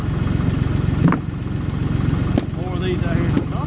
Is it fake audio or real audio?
real